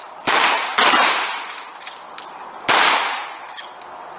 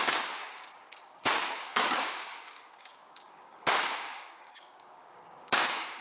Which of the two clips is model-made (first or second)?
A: second